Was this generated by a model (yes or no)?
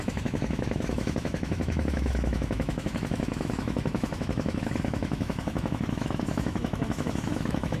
yes